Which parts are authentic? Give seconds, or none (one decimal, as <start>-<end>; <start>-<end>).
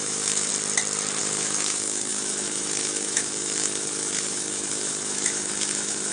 0.5-1.2